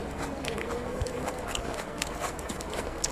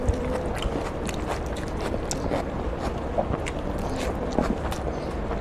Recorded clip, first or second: second